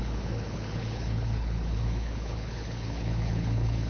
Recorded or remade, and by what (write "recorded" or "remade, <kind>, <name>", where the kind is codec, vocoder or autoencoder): remade, codec, HILCodec